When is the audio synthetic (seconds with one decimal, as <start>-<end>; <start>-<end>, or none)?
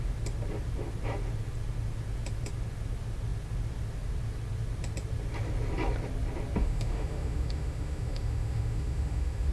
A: 6.6-9.5